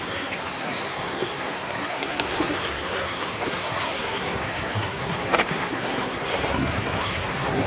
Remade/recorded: remade